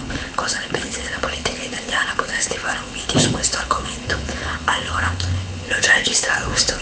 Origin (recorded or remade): remade